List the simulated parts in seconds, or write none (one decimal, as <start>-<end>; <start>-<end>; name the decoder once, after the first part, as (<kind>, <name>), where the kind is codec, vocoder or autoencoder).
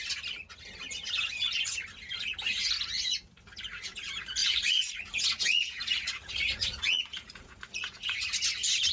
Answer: 4.4-8.2 (vocoder, Vocos)